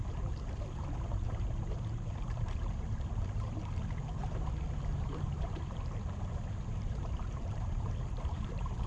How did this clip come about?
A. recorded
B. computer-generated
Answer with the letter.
B